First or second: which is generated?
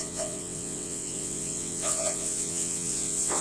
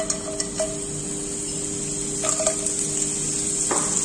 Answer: first